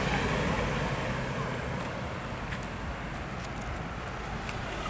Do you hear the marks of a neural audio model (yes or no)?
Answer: no